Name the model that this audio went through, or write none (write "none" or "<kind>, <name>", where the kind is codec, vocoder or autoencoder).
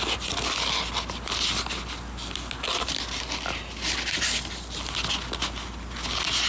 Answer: none